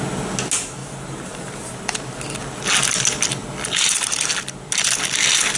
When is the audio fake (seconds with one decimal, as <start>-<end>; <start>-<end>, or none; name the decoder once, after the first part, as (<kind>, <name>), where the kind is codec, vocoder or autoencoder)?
0.8-1.8 (vocoder, BigVGAN v2)